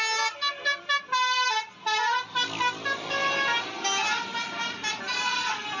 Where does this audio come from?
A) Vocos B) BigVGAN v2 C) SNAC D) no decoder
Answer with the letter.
D